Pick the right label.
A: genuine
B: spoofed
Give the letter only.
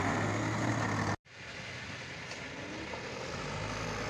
A